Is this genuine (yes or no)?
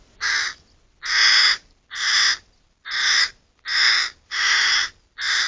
yes